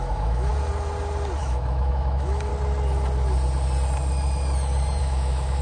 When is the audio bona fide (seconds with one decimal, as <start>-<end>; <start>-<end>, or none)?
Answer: 0.5-1.4; 2.5-5.0